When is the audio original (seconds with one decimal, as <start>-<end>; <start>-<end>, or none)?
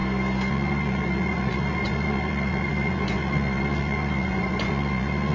0.0-0.5